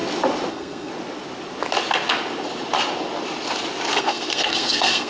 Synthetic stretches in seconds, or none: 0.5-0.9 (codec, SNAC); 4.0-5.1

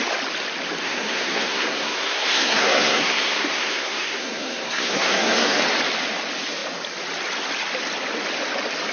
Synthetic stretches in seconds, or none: 0.8-5.6 (codec, SNAC)